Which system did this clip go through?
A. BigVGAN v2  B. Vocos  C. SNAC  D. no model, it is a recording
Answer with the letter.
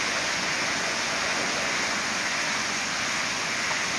B